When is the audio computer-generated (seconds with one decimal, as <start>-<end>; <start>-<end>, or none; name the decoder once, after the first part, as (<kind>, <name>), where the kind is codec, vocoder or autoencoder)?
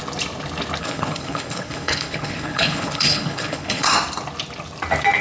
0.8-3.9 (codec, HILCodec)